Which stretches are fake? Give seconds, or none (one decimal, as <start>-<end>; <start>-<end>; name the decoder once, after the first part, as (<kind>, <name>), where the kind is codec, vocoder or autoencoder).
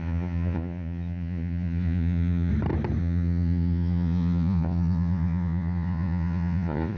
0.0-2.5 (vocoder, Vocos); 3.0-7.0